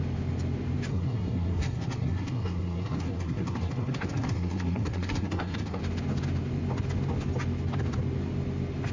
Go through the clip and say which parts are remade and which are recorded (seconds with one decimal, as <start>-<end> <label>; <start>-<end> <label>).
0.0-0.9 recorded; 0.9-5.8 remade; 5.8-8.9 recorded